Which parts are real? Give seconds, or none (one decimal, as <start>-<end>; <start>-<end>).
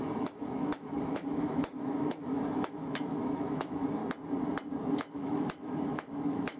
4.0-4.9